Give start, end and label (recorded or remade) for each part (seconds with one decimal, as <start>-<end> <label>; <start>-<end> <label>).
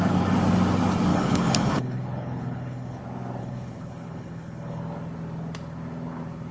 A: 0.0-1.1 recorded; 1.1-3.0 remade; 3.0-3.4 recorded; 3.4-4.8 remade; 4.8-6.5 recorded